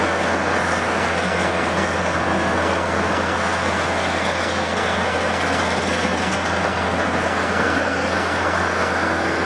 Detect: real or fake fake